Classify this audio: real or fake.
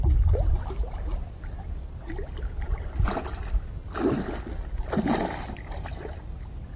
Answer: real